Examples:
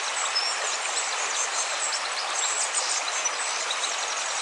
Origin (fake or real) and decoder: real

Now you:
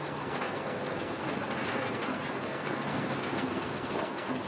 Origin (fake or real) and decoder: fake, codec, SNAC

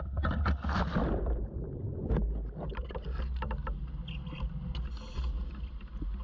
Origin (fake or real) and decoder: real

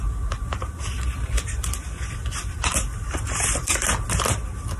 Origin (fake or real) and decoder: real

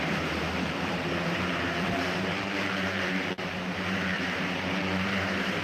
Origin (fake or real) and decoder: fake, vocoder, BigVGAN v2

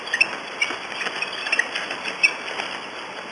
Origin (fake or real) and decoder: real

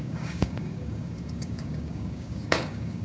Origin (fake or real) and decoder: fake, codec, DAC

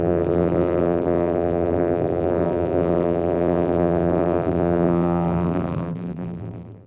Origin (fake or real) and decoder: fake, vocoder, BigVGAN v2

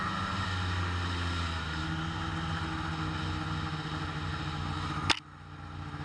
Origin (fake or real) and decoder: real